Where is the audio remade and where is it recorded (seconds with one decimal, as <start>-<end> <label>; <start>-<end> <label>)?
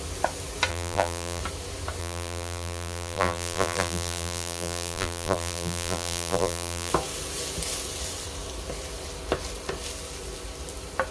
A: 0.0-0.7 recorded; 0.7-1.4 remade; 1.4-2.0 recorded; 2.0-6.9 remade; 6.9-11.1 recorded